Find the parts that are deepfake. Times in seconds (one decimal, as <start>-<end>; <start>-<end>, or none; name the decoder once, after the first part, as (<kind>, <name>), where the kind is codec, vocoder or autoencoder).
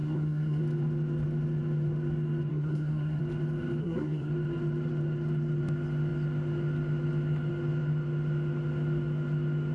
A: 0.0-0.6 (codec, SNAC); 2.5-3.2; 3.8-4.3